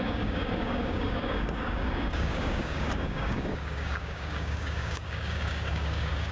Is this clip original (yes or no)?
no